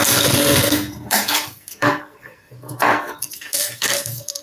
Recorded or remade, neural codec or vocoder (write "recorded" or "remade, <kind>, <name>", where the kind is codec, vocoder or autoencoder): remade, codec, SNAC